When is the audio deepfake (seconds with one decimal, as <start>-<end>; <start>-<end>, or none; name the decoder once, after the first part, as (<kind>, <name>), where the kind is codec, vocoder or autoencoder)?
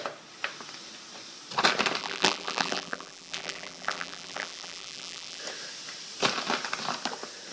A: 2.0-5.4 (vocoder, BigVGAN v2)